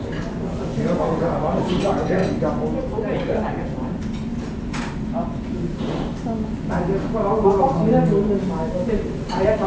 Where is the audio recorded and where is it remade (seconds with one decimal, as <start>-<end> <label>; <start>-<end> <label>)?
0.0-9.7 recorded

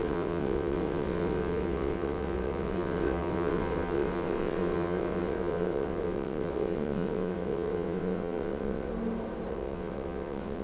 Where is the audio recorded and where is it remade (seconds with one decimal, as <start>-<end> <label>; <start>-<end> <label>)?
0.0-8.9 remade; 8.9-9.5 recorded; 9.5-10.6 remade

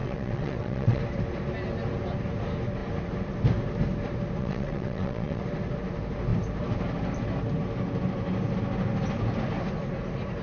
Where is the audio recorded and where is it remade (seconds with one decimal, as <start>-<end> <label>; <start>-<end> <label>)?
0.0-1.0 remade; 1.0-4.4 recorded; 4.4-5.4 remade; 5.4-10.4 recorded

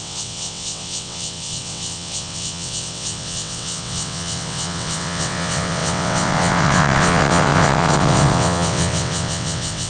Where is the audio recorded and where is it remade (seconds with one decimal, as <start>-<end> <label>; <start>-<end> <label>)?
0.0-9.9 remade

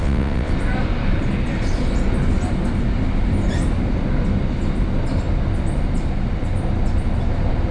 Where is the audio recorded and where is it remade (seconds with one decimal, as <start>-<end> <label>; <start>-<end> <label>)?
0.0-0.5 remade; 0.5-7.7 recorded

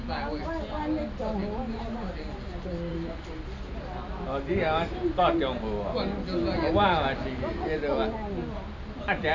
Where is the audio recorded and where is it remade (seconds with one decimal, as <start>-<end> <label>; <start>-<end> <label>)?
0.0-9.3 recorded

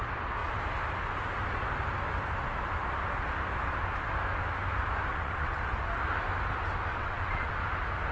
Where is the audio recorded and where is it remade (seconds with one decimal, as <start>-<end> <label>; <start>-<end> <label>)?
0.0-5.1 recorded; 5.1-5.6 remade; 5.6-6.9 recorded; 6.9-7.5 remade; 7.5-8.1 recorded